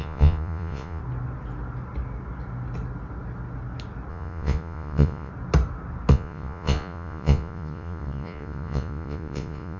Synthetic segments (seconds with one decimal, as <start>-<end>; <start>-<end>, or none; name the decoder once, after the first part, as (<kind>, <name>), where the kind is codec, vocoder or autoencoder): 0.0-1.0 (vocoder, Vocos); 4.1-5.3; 6.1-9.8